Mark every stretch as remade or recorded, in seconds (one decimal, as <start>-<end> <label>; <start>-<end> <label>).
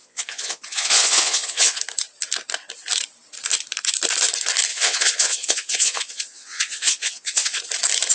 0.0-1.8 remade; 1.8-4.7 recorded; 4.7-7.6 remade; 7.6-8.1 recorded